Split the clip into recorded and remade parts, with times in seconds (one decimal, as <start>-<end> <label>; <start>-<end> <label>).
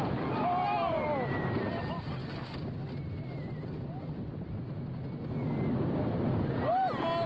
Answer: 0.0-7.3 recorded